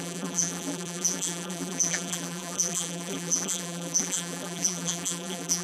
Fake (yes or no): yes